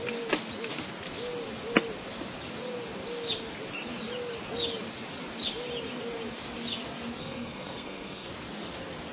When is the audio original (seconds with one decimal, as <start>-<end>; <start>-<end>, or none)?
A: 0.0-7.2; 8.3-9.1